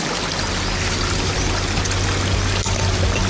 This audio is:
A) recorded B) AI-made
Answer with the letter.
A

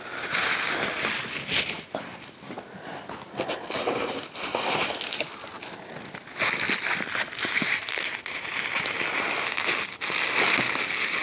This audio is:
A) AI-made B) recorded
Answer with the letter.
B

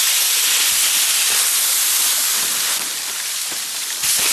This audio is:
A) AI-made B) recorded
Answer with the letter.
B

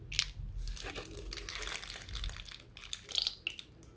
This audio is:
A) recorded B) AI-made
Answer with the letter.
A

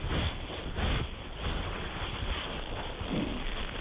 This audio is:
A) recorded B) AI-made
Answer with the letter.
A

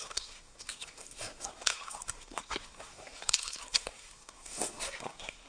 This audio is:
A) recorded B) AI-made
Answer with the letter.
B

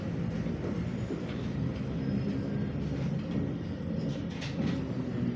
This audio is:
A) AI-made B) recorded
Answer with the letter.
B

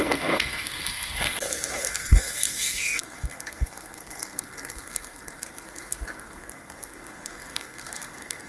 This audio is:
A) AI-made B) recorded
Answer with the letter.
A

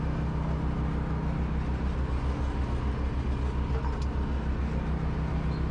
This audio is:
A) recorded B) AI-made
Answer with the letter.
A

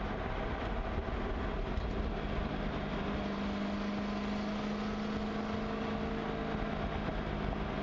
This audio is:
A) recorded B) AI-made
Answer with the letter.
A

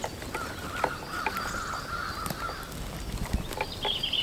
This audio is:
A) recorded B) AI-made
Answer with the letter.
A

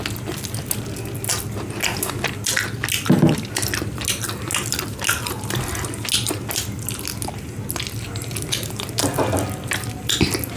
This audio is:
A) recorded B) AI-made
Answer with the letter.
A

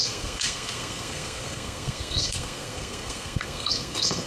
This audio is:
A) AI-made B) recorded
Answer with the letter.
A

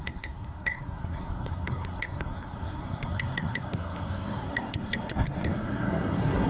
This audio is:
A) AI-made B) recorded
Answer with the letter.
A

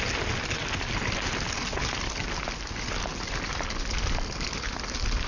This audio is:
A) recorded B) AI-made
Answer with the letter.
A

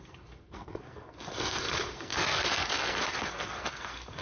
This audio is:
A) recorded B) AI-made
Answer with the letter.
B